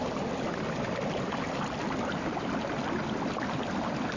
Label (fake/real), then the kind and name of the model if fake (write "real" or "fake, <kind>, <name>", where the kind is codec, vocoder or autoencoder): real